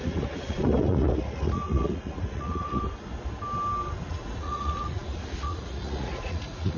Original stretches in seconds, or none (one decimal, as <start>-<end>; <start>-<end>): 2.8-4.1